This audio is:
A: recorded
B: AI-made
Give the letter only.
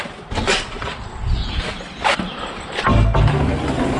A